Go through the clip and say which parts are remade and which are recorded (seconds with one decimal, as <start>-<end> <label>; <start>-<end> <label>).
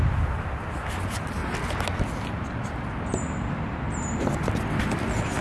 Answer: 0.0-5.4 recorded